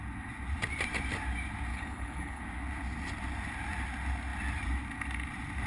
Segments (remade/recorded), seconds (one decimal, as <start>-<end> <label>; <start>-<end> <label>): 0.0-1.7 recorded; 1.7-2.4 remade; 2.4-5.7 recorded